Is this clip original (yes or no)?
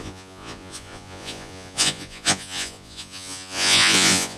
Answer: no